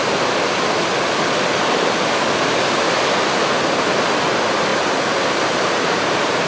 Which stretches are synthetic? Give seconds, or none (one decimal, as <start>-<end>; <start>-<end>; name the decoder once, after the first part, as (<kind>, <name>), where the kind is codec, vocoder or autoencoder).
4.7-6.5 (vocoder, BigVGAN v2)